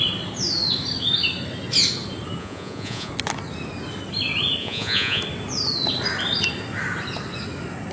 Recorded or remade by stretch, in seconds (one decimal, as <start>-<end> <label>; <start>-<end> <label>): 0.0-2.4 recorded; 2.4-3.1 remade; 3.1-4.6 recorded; 4.6-5.2 remade; 5.2-7.9 recorded